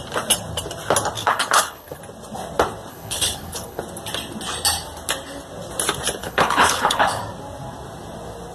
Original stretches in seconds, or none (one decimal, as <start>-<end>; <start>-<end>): 0.0-1.2; 2.0-2.9; 3.8-6.2; 7.2-8.5